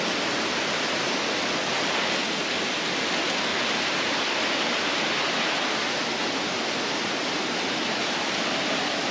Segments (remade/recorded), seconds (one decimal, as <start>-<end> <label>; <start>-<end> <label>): 0.0-3.5 recorded; 3.5-4.1 remade; 4.1-9.1 recorded